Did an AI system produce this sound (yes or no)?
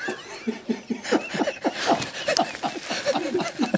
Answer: no